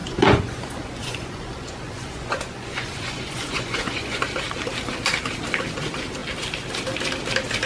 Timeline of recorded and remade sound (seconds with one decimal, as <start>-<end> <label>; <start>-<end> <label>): 0.0-4.2 remade; 4.2-7.7 recorded